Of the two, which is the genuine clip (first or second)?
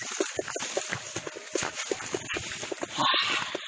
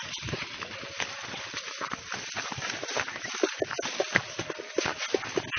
second